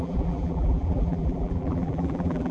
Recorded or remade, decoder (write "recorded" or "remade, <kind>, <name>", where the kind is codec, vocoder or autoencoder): remade, vocoder, BigVGAN v2